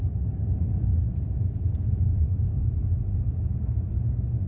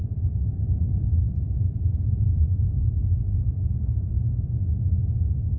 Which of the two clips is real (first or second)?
first